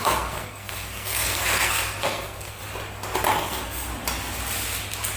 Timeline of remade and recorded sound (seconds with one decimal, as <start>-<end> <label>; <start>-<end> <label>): 0.0-2.6 remade; 2.6-3.3 recorded; 3.3-3.9 remade; 3.9-5.2 recorded